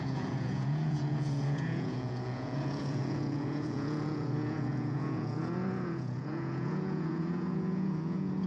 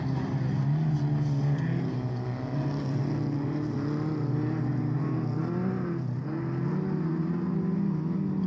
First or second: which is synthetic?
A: first